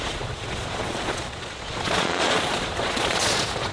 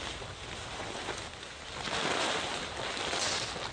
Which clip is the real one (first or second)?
second